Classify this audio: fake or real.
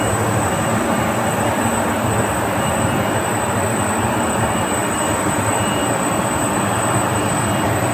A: fake